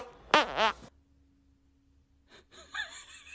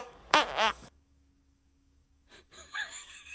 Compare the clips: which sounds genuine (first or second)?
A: first